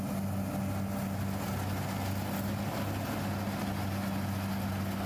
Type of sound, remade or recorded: recorded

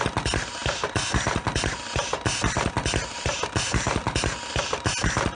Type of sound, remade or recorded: recorded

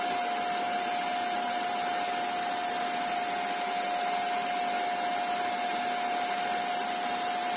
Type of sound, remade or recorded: recorded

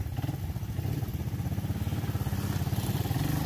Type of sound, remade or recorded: recorded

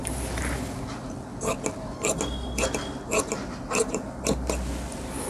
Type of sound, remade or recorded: recorded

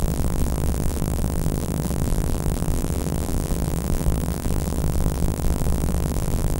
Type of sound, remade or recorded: remade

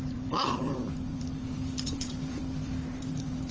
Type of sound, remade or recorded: remade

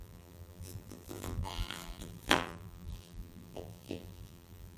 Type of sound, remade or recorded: remade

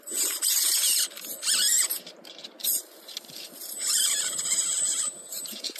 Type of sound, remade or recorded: remade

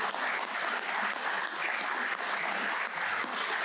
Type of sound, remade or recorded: recorded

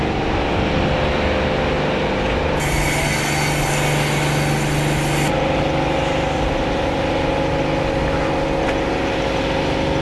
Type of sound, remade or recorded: recorded